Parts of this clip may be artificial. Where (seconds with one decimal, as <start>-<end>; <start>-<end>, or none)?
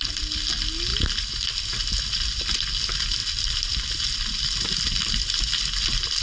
none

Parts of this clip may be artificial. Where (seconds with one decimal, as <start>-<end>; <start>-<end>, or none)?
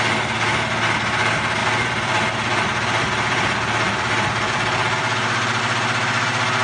1.6-5.6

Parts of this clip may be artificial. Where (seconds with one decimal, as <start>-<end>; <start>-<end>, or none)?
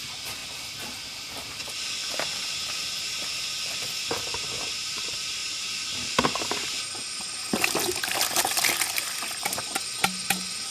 5.4-6.4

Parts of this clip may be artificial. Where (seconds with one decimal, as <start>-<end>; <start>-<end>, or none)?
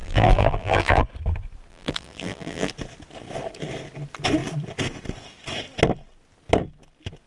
0.0-1.0; 1.7-2.7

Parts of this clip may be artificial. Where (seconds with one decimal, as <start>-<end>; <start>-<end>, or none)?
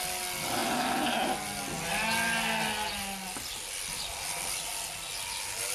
none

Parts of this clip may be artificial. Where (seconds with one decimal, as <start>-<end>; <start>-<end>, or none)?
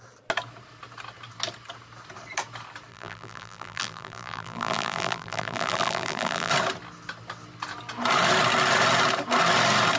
2.9-6.5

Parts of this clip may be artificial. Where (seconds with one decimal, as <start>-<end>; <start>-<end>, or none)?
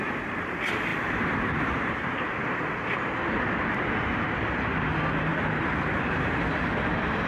0.0-0.5; 0.9-2.2; 5.3-6.4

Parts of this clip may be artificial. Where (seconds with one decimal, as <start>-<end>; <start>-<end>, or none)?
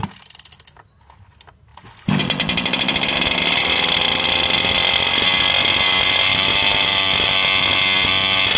none